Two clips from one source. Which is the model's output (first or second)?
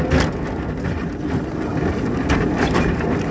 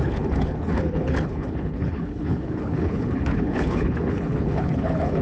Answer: second